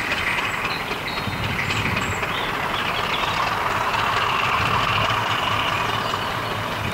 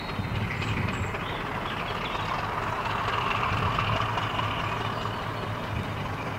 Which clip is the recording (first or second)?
second